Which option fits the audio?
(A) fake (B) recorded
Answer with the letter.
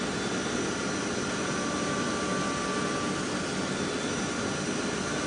B